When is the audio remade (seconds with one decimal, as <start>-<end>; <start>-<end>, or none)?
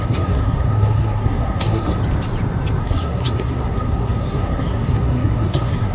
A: 0.0-2.0; 2.8-5.9